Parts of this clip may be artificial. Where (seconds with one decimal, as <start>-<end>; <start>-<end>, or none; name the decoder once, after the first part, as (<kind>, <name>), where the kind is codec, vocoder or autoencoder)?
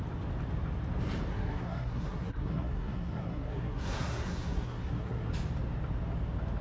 1.3-5.3 (codec, SNAC)